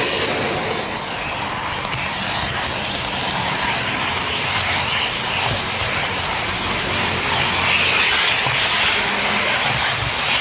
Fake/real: real